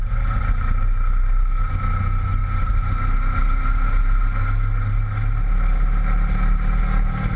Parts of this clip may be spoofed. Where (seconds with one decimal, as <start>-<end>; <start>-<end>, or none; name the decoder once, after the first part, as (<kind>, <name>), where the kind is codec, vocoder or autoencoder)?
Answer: none